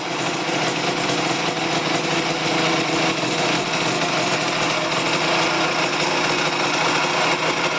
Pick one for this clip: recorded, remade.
recorded